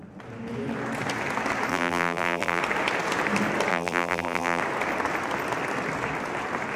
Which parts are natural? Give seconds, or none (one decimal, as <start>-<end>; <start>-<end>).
0.0-1.7; 2.6-3.7; 4.6-6.8